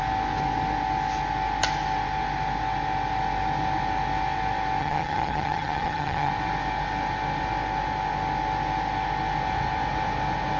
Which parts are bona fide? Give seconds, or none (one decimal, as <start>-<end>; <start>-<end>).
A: 0.0-4.8; 6.3-10.6